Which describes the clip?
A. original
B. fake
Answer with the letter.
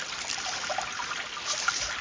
A